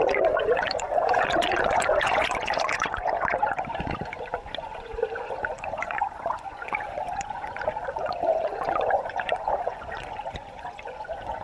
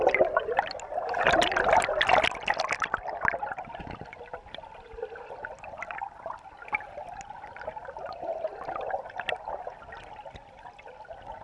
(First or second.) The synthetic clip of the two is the first